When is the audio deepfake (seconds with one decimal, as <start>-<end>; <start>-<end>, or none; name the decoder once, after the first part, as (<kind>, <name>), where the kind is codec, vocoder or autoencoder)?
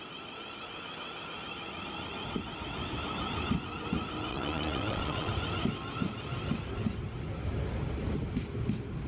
4.3-5.3 (vocoder, WaveNeXt)